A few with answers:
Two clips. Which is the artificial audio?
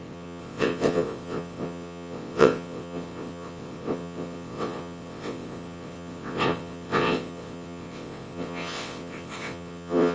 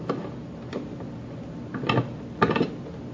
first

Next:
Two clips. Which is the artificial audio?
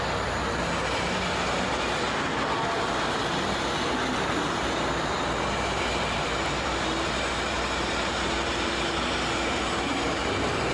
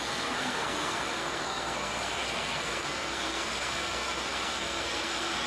second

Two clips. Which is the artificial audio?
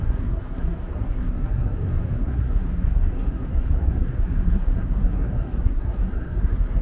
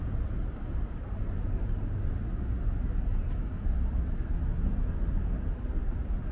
first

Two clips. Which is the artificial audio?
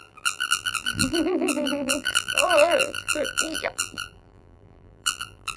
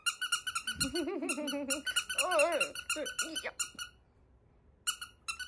first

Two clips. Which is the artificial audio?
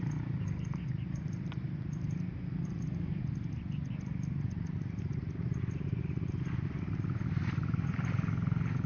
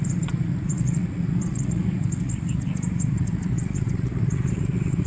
second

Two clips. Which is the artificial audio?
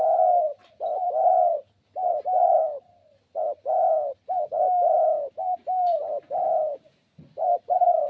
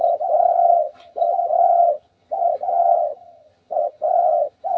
second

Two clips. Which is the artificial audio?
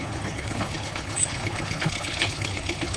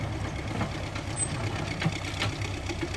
first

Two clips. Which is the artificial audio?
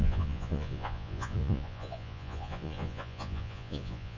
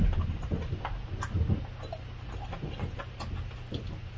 first